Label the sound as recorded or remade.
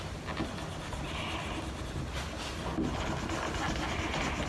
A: recorded